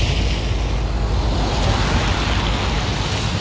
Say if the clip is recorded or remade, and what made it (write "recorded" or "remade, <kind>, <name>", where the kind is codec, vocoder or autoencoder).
recorded